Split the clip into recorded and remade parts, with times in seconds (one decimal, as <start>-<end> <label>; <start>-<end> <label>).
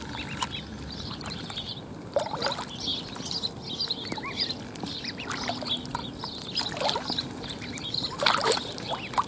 0.0-0.7 recorded; 0.7-1.8 remade; 1.8-6.0 recorded; 6.0-8.9 remade; 8.9-9.3 recorded